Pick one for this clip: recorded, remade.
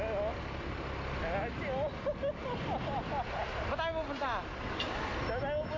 recorded